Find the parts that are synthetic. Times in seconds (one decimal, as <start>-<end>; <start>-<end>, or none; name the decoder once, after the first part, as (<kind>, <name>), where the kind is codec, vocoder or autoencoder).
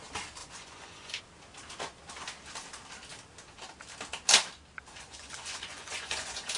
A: 0.4-1.2 (vocoder, Vocos); 4.9-6.6